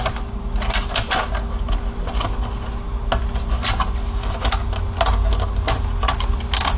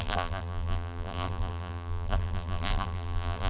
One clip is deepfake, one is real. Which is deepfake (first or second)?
second